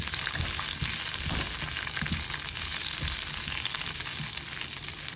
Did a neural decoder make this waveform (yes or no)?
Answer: no